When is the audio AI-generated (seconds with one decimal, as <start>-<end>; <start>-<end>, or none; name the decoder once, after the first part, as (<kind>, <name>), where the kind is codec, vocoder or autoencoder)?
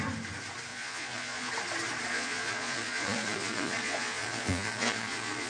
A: 0.7-1.5 (vocoder, Vocos); 2.1-5.5